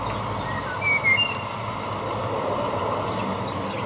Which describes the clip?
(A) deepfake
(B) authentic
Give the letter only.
B